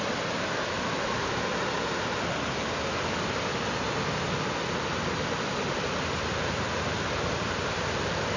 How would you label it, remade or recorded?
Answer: recorded